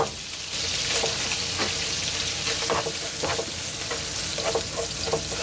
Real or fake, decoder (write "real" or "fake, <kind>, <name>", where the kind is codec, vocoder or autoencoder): real